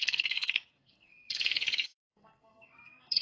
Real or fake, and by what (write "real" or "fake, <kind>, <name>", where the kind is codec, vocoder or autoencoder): fake, codec, SNAC